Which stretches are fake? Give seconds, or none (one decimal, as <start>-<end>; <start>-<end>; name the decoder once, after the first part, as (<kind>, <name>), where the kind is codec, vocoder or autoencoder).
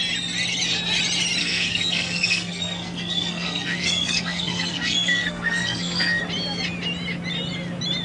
1.4-6.2 (codec, SNAC)